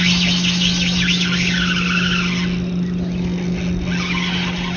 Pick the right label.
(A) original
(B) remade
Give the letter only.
A